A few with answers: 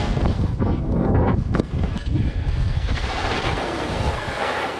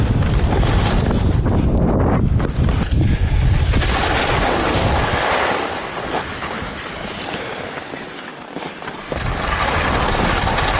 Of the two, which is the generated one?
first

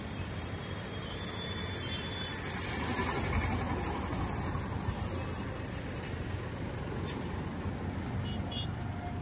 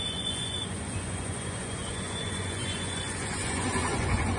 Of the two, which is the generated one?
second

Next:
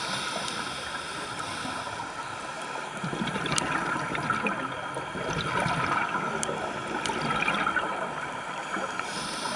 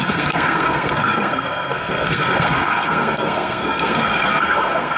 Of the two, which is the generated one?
second